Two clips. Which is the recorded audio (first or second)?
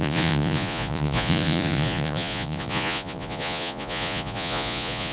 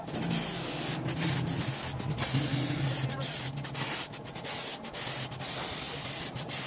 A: second